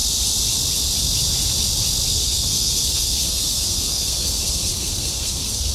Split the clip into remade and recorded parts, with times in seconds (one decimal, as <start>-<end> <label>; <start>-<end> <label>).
0.0-2.1 recorded; 2.1-5.7 remade